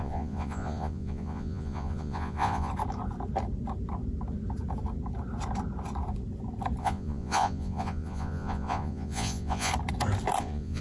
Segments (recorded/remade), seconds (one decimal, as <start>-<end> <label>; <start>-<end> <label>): 0.0-2.7 remade; 2.7-6.8 recorded; 6.8-9.7 remade; 9.7-10.4 recorded; 10.4-10.8 remade